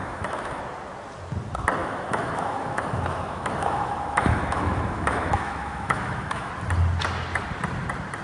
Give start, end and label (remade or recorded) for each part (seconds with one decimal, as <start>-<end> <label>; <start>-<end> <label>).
0.0-0.6 remade; 0.6-1.8 recorded; 1.8-6.5 remade; 6.5-8.2 recorded